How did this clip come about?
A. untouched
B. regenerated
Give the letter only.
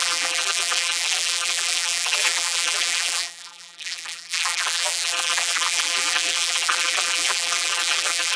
B